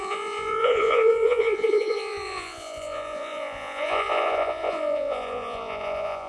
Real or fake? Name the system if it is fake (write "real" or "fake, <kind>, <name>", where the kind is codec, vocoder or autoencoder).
fake, vocoder, Vocos